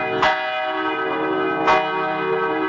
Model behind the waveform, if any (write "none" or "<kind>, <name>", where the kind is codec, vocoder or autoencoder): none